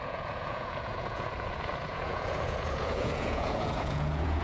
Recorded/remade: remade